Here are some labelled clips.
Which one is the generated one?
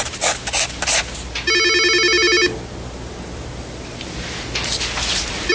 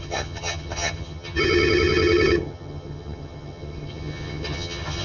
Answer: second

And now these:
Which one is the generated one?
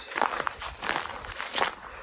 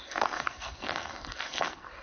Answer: second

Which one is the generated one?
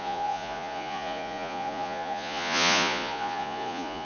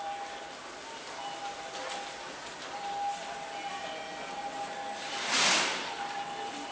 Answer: first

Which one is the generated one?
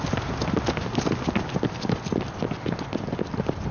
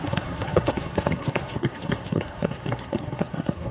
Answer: second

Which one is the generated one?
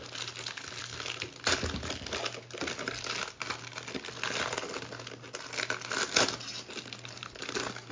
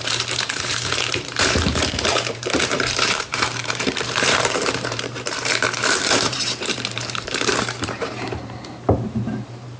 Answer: second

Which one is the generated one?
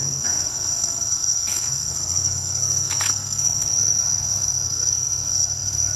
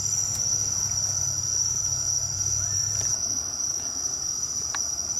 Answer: first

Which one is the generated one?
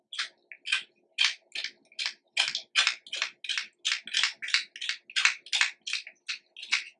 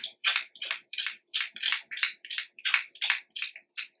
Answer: second